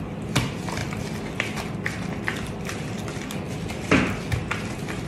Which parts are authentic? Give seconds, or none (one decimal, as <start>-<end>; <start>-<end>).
0.0-0.8; 3.2-5.1